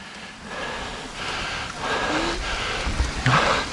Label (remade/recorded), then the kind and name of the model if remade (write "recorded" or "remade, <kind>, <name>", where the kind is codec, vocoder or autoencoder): recorded